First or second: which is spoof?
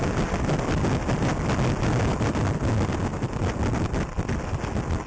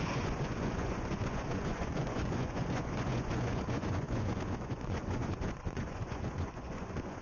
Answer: second